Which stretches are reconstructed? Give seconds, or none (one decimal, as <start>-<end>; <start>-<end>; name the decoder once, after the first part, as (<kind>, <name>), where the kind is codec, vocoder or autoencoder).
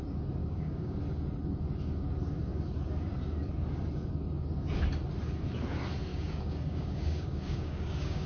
0.4-1.0 (codec, DAC); 6.1-8.3